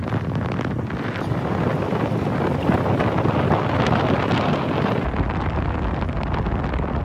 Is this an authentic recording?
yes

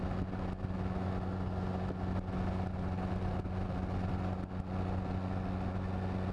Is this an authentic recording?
yes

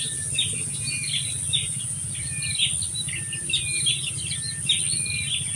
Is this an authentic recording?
yes